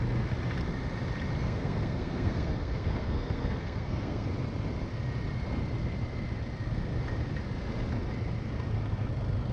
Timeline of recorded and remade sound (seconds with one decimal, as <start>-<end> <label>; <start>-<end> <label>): 0.0-1.4 recorded; 1.4-4.3 remade; 4.3-9.5 recorded